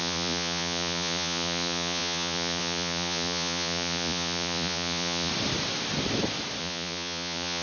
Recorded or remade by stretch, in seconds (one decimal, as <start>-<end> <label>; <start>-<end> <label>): 0.0-5.3 remade; 5.3-6.6 recorded; 6.6-7.6 remade